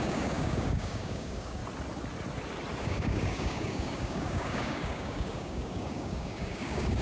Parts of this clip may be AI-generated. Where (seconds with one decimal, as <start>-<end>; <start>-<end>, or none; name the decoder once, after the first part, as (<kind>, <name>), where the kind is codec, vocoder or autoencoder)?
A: 0.0-1.6 (codec, DAC); 2.8-7.0